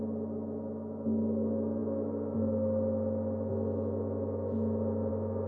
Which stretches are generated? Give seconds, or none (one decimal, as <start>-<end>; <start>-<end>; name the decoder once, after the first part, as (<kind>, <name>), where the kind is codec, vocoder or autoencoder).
none